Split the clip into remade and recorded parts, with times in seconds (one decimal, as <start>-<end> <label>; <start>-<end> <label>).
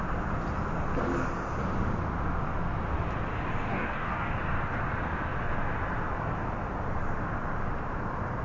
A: 0.0-3.7 recorded; 3.7-4.3 remade; 4.3-8.4 recorded